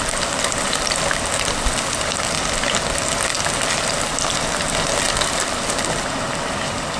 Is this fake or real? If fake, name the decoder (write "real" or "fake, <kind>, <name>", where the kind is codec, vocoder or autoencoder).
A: real